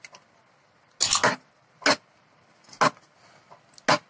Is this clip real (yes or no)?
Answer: yes